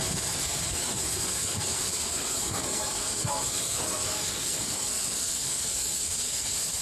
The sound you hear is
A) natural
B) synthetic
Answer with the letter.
B